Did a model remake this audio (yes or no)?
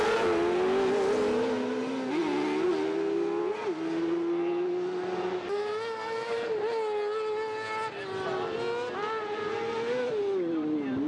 no